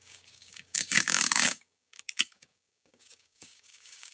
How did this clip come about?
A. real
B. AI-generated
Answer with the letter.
B